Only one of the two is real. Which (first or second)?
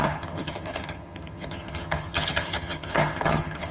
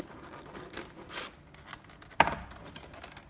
second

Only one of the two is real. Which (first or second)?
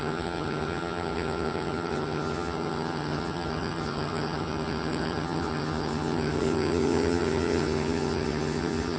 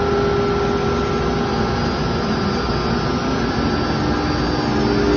second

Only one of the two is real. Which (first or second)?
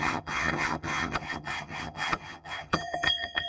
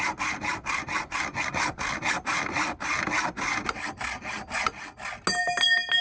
second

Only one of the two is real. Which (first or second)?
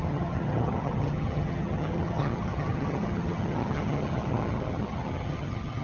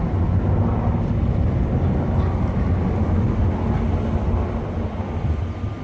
second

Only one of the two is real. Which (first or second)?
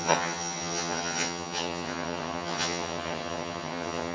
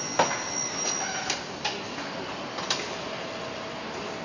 second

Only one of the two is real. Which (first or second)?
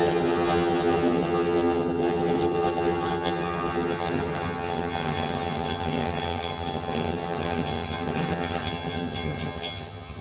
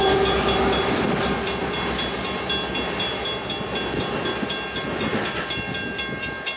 second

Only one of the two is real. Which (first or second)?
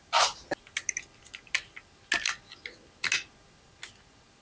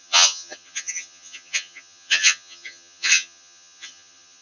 first